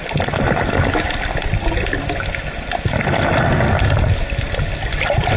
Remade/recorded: recorded